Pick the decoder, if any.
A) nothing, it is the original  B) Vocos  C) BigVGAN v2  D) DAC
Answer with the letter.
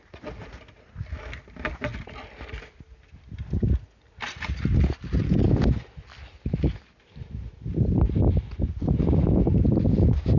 A